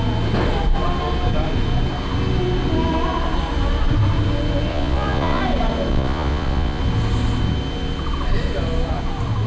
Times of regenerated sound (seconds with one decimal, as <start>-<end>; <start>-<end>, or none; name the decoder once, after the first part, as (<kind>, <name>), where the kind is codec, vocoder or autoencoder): 4.7-5.4 (vocoder, Vocos); 5.9-6.8